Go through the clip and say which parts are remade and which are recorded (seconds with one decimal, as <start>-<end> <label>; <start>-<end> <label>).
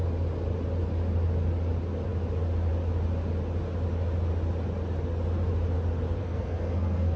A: 0.0-6.2 recorded; 6.2-7.2 remade